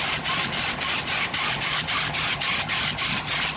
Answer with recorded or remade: recorded